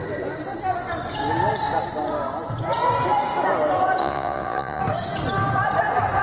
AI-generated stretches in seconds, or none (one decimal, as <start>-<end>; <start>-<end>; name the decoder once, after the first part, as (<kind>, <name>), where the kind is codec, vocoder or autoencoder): 4.0-4.8 (vocoder, Vocos)